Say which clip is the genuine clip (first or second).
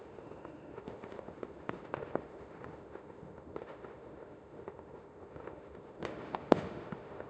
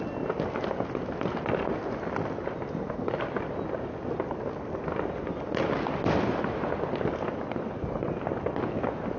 second